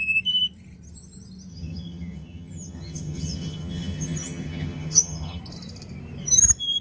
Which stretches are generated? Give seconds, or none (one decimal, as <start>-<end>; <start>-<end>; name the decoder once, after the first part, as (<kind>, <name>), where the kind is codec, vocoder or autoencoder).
1.5-5.4 (vocoder, HiFi-GAN)